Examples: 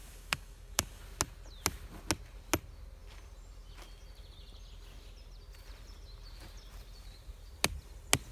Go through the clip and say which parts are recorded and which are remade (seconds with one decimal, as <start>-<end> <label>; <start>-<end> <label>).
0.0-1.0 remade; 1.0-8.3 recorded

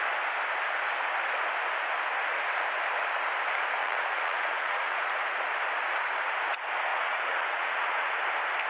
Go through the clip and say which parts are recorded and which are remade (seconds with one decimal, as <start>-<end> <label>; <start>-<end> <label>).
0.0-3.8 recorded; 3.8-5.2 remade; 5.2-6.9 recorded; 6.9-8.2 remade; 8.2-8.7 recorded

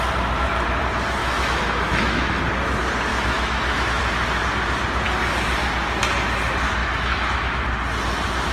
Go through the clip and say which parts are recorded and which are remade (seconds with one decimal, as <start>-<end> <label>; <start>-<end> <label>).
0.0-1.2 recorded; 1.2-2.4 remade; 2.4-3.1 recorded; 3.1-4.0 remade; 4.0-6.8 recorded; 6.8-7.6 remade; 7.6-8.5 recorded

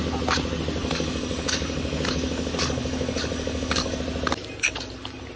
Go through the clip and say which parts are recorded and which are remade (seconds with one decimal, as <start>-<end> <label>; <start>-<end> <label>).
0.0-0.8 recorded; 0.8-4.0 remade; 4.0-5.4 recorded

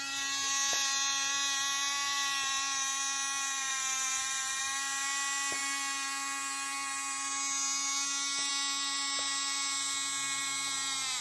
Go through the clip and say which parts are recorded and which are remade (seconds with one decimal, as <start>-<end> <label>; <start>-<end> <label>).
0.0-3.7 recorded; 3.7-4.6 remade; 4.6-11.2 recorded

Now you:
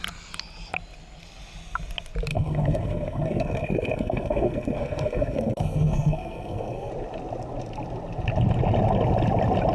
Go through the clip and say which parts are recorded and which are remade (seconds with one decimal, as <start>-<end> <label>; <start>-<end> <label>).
0.0-2.3 recorded; 2.3-6.9 remade; 6.9-9.7 recorded

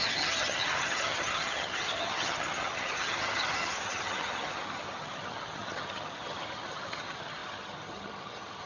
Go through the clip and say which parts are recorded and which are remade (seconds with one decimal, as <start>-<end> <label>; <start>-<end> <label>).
0.0-8.7 remade